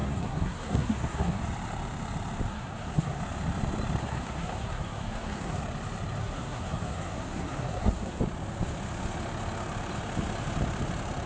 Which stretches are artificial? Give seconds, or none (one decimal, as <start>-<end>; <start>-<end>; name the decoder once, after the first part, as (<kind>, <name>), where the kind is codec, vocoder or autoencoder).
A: 0.0-1.4 (codec, SNAC); 2.5-3.2; 4.0-5.6; 6.2-8.2